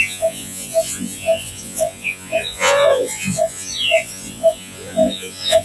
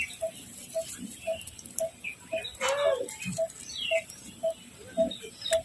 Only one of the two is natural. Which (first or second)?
second